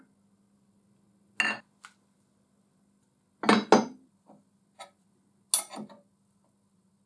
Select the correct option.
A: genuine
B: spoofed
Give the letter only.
A